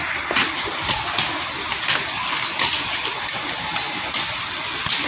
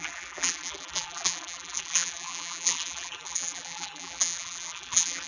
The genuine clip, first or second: first